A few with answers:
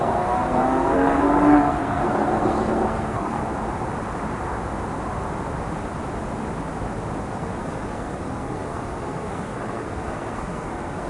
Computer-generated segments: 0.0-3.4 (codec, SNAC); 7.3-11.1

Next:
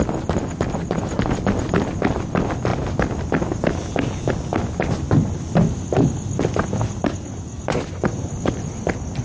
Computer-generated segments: none

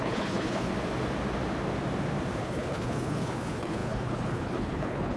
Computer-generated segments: 0.0-0.7 (codec, HILCodec); 2.4-5.2

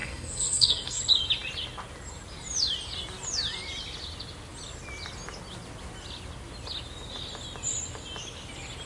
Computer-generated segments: 0.0-1.0 (codec, SNAC)

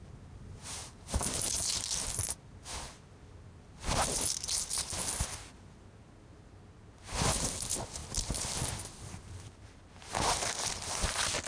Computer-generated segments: none